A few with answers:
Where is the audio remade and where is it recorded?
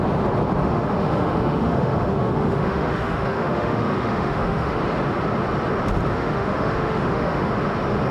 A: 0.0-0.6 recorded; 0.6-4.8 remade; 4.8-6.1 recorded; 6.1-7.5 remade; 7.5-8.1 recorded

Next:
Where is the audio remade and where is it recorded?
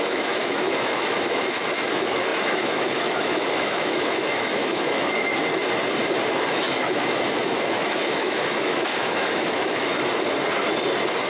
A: 0.0-5.3 remade; 5.3-6.5 recorded; 6.5-9.9 remade; 9.9-11.3 recorded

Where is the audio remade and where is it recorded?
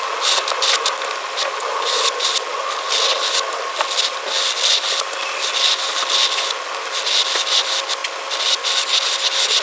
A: 0.0-9.6 recorded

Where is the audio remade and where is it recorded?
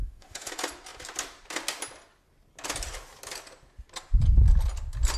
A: 0.0-0.5 remade; 0.5-5.2 recorded